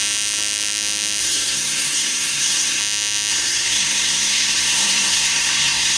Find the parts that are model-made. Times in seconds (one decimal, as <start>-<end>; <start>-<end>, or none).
1.2-2.8; 3.3-6.0